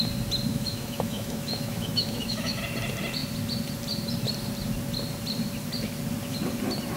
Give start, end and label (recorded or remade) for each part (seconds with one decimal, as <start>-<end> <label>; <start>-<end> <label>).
0.0-0.5 recorded; 0.5-2.6 remade; 2.6-7.0 recorded